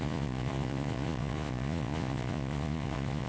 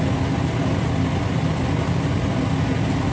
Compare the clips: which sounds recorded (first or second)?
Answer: second